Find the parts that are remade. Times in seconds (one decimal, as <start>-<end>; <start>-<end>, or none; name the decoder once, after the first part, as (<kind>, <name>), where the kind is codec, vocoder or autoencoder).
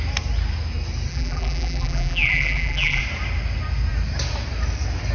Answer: 1.1-3.0 (vocoder, BigVGAN v2)